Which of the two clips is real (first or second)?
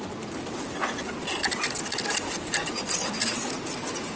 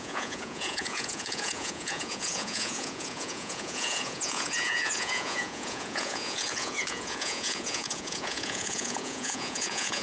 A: first